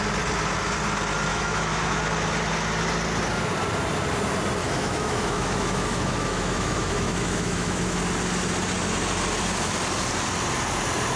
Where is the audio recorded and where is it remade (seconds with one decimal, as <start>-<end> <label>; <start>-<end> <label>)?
0.0-1.3 recorded; 1.3-2.0 remade; 2.0-4.6 recorded; 4.6-8.0 remade; 8.0-11.2 recorded